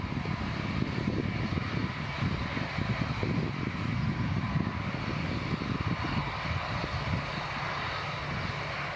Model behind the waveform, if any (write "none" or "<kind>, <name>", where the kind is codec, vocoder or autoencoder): none